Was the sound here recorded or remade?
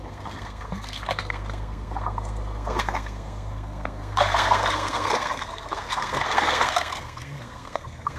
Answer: remade